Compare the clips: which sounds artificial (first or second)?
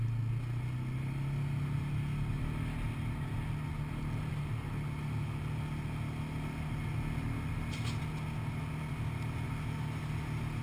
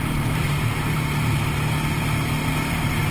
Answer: second